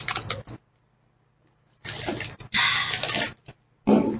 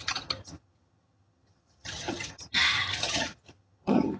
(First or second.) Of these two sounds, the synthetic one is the second